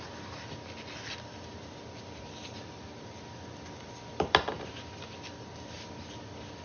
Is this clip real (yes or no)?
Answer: yes